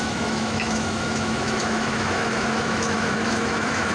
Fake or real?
fake